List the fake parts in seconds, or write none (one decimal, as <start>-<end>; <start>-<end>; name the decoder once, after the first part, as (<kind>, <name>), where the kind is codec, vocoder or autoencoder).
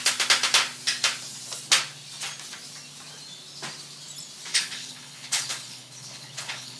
4.5-6.8 (codec, HILCodec)